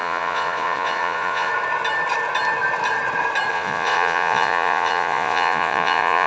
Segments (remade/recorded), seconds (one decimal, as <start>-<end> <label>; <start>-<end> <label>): 0.0-1.5 remade; 1.5-3.5 recorded; 3.5-6.3 remade